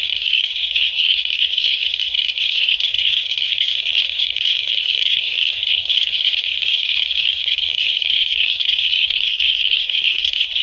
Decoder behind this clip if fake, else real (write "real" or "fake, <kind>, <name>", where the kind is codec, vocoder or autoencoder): fake, codec, SNAC